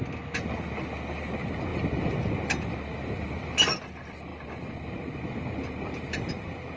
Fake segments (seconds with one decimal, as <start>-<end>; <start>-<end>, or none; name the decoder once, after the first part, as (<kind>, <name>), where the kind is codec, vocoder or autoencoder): none